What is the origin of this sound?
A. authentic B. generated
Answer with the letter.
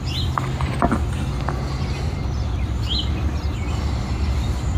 A